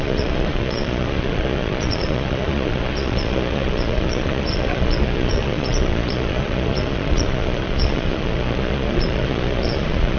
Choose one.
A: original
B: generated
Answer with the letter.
B